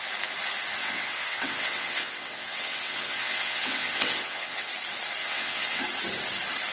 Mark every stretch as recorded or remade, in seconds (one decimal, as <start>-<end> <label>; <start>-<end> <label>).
0.0-0.8 recorded; 0.8-4.7 remade; 4.7-5.2 recorded; 5.2-5.8 remade; 5.8-6.7 recorded